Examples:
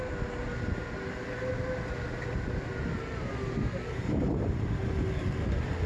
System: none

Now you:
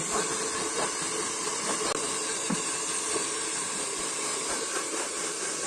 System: none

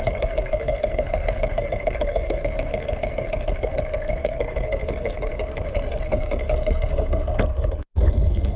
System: codec, SNAC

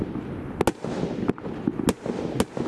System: none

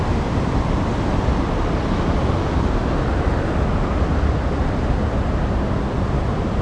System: none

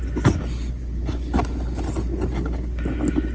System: none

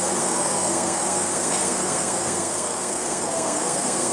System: codec, SNAC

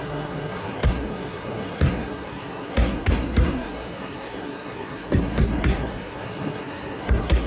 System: codec, SNAC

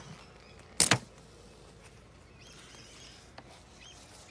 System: none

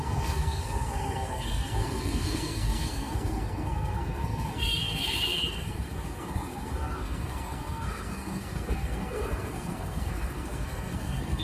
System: codec, SNAC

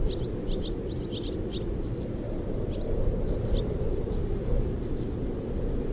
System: none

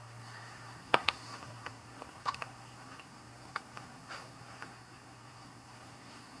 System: codec, SNAC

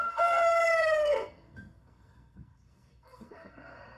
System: codec, SNAC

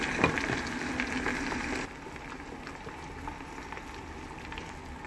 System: none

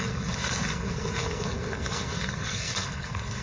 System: codec, SNAC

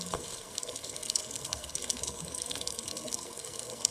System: codec, SNAC